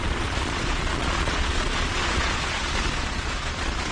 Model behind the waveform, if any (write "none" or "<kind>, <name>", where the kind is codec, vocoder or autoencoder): vocoder, Vocos